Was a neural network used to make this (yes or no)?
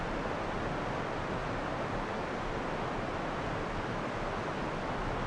no